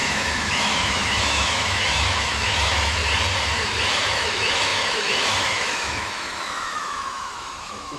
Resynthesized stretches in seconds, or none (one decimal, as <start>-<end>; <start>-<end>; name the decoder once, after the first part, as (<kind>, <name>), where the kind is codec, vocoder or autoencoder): 0.0-3.0 (autoencoder, DAC-VAE); 3.8-8.0